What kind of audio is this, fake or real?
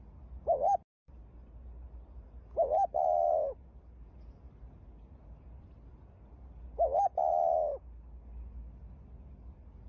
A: real